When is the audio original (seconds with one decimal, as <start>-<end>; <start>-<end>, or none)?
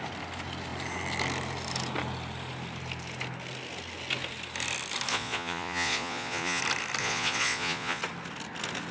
0.0-5.1; 6.6-7.0; 8.0-8.9